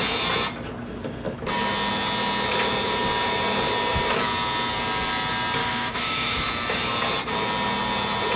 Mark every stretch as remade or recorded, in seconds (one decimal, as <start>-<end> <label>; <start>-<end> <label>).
0.0-5.6 recorded; 5.6-6.5 remade; 6.5-8.4 recorded